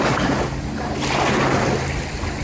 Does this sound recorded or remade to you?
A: recorded